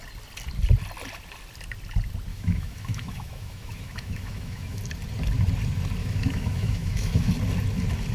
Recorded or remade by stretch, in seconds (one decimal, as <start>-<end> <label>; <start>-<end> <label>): 0.0-2.3 recorded; 2.3-4.8 remade; 4.8-6.0 recorded; 6.0-7.3 remade; 7.3-8.1 recorded